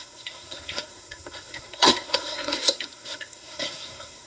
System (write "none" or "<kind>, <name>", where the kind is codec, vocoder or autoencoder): codec, SNAC